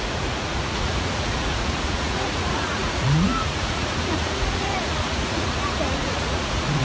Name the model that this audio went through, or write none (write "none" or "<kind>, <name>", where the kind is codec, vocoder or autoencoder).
vocoder, Vocos